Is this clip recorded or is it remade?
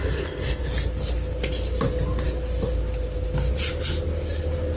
recorded